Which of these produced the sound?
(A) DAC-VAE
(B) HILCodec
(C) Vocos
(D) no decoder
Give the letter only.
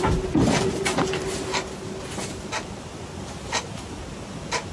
D